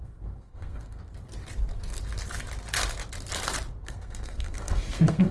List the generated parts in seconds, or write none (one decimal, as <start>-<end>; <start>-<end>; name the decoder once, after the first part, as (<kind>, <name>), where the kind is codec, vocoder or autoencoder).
0.0-1.0 (codec, SNAC); 3.8-5.3